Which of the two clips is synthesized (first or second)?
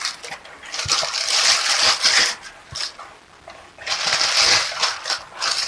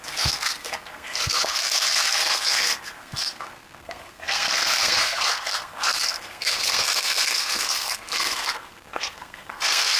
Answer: second